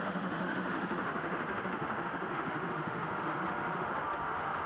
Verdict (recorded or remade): remade